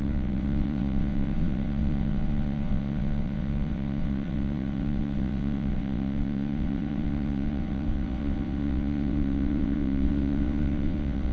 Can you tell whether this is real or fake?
fake